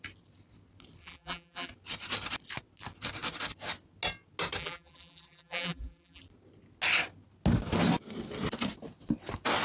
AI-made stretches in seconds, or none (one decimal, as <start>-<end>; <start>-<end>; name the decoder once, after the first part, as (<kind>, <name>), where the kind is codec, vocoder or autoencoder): 1.0-1.7 (vocoder, BigVGAN v2); 4.6-6.2